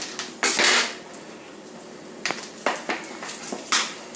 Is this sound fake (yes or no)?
no